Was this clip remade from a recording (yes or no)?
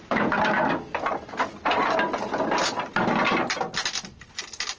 no